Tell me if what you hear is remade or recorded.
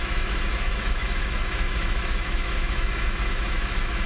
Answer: remade